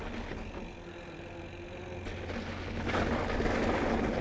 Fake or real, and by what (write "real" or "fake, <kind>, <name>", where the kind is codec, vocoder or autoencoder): real